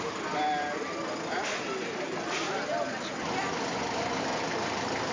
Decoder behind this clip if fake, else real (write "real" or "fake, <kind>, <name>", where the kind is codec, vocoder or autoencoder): real